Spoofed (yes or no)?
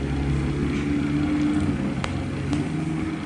no